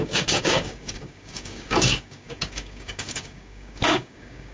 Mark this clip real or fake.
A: fake